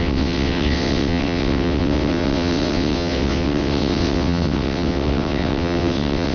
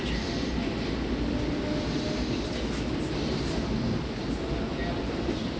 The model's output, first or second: first